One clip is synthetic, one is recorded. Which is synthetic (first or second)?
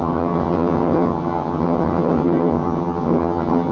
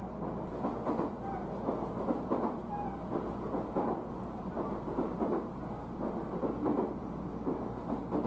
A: first